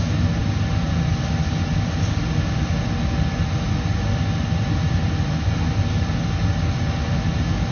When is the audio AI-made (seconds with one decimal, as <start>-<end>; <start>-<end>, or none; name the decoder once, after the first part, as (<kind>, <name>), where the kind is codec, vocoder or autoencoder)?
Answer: none